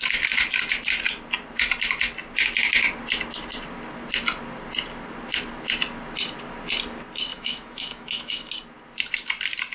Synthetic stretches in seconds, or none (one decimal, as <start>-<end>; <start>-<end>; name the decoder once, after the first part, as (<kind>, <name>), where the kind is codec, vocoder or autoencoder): 7.3-8.5 (autoencoder, DAC-VAE)